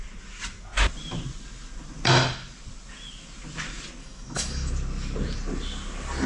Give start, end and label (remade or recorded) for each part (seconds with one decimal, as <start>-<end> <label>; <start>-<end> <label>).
0.0-4.0 recorded; 4.0-4.7 remade; 4.7-6.3 recorded